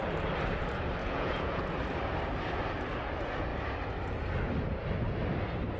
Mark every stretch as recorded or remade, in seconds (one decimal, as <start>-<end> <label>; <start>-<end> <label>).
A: 0.0-1.0 recorded; 1.0-1.6 remade; 1.6-5.8 recorded